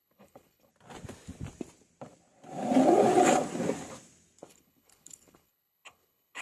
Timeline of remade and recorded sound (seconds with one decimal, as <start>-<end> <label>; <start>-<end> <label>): 0.0-0.7 remade; 0.7-4.5 recorded; 4.5-6.4 remade